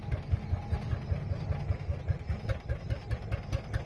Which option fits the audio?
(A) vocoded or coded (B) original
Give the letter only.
B